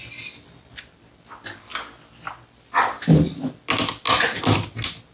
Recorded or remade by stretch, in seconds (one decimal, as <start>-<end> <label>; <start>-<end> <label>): 0.0-5.1 recorded